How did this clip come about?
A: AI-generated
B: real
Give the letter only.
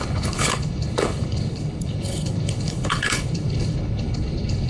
A